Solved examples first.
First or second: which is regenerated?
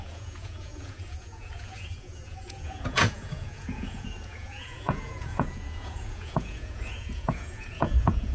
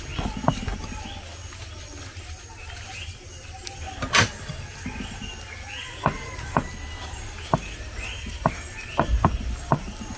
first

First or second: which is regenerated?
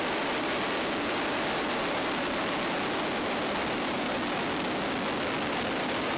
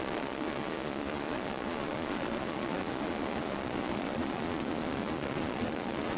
second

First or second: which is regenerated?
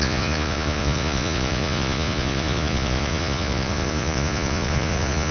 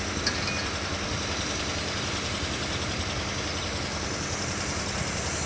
first